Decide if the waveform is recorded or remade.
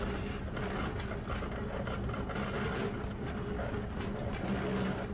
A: recorded